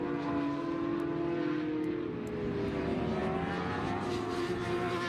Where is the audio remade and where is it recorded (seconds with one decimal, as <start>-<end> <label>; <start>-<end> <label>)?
0.0-5.1 recorded